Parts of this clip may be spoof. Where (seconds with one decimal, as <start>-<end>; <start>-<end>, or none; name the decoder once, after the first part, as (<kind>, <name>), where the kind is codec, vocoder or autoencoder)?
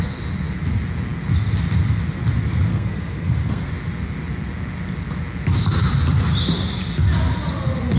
2.7-3.7 (codec, SNAC)